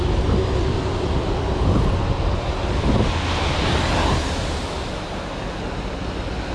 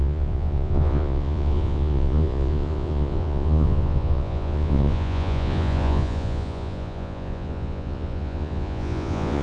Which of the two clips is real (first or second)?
first